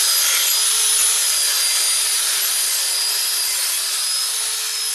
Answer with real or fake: real